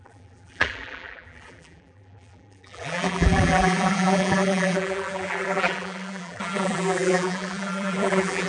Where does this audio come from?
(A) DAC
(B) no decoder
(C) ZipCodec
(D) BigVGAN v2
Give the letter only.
D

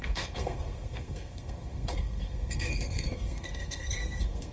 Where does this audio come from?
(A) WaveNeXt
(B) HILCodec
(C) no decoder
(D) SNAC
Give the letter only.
D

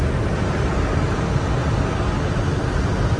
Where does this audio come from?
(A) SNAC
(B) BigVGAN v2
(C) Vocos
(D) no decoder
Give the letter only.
D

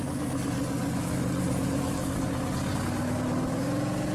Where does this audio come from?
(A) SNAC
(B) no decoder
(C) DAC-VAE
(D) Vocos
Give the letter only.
B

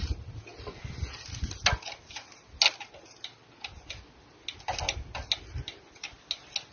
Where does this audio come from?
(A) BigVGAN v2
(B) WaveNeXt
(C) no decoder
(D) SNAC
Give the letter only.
C